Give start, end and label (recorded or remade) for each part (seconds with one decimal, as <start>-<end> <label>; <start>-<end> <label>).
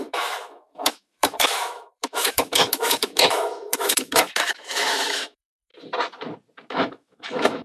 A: 0.0-5.7 remade; 5.7-6.7 recorded; 6.7-7.6 remade